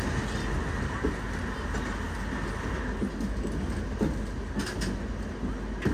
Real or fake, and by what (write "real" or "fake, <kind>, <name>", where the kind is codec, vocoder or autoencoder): real